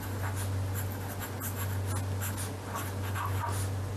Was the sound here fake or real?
real